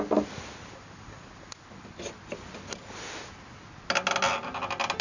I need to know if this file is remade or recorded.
recorded